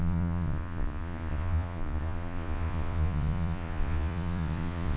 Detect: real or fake fake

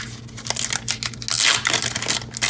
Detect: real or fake real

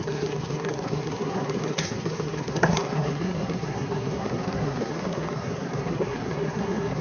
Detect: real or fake fake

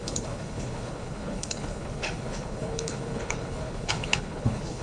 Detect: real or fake fake